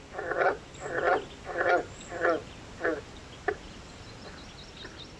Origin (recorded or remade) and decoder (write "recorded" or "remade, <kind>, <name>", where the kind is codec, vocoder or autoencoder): recorded